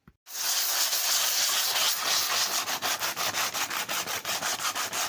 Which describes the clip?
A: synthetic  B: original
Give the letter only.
B